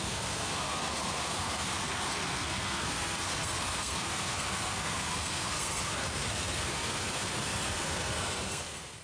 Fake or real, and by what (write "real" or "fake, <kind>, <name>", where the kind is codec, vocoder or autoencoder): fake, codec, SNAC